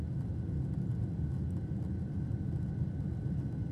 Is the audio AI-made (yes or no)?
no